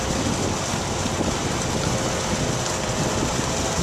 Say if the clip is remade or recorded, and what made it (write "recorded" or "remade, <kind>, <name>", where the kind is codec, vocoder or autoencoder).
recorded